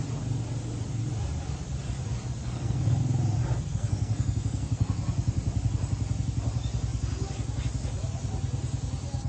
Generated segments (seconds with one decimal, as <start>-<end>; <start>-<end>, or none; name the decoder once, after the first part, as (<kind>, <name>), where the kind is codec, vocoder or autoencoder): 2.4-3.0 (codec, SNAC); 3.7-4.9